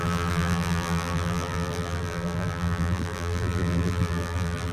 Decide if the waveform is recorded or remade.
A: remade